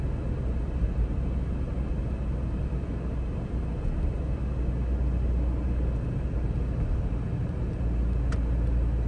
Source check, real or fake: real